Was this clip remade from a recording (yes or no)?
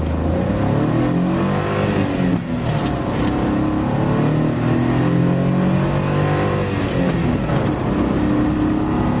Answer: no